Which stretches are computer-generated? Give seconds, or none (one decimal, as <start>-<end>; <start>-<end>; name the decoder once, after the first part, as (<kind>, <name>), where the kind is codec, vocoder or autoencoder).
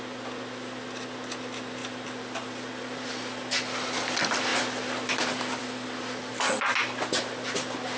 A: none